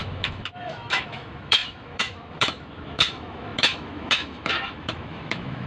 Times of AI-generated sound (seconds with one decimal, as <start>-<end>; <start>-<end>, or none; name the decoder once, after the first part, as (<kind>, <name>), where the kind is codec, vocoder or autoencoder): 0.0-5.7 (autoencoder, DAC-VAE)

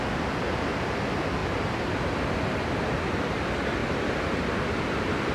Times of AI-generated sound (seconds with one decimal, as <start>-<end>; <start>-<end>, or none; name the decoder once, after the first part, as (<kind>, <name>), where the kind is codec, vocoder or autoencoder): none

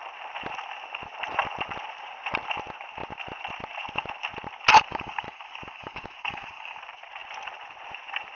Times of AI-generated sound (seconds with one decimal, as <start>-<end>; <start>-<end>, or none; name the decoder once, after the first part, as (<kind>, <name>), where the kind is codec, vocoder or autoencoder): 4.9-6.8 (codec, DAC)

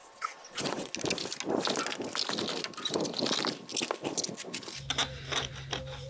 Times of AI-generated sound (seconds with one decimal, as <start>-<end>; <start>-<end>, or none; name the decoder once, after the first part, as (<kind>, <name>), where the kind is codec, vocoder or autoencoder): 0.0-0.9 (vocoder, WaveNeXt)

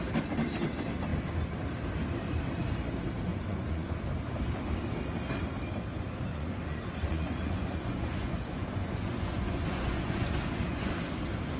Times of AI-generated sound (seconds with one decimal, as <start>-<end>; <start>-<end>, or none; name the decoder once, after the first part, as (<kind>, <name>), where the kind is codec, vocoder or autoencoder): 3.3-4.0 (vocoder, Vocos); 6.3-10.9

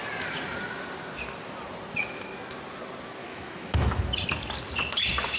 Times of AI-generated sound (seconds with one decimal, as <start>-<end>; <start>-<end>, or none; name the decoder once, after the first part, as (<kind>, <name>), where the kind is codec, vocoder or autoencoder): 3.2-3.9 (autoencoder, DAC-VAE)